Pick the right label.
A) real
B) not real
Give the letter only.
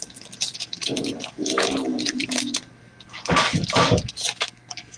B